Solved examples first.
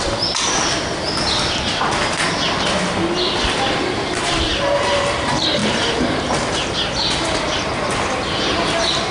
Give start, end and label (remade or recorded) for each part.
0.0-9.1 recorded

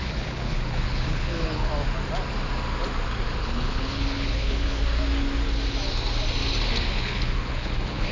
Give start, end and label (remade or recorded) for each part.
0.0-1.7 remade; 1.7-3.4 recorded; 3.4-4.8 remade; 4.8-6.9 recorded; 6.9-8.1 remade

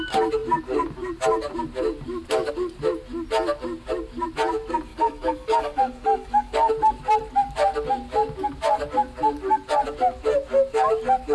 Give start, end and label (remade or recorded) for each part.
0.0-4.9 recorded; 4.9-6.7 remade; 6.7-11.3 recorded

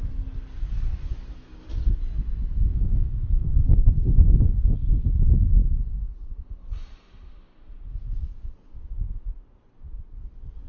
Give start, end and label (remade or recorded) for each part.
0.0-2.7 recorded; 2.7-5.1 remade; 5.1-10.7 recorded

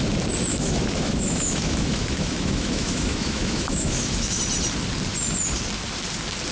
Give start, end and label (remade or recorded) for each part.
0.0-0.5 recorded; 0.5-4.4 remade; 4.4-6.5 recorded

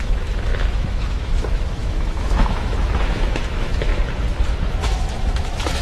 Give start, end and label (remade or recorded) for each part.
0.0-3.9 remade; 3.9-4.8 recorded; 4.8-5.8 remade

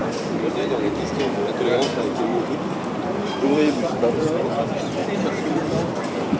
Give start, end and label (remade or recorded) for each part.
0.0-0.7 remade; 0.7-2.3 recorded; 2.3-4.6 remade; 4.6-5.0 recorded; 5.0-5.9 remade; 5.9-6.4 recorded

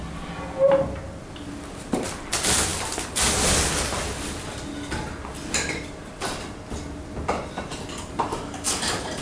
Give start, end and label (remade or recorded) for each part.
0.0-9.2 recorded